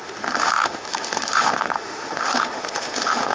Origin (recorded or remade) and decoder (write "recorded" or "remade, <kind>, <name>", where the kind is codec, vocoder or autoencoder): remade, autoencoder, DAC-VAE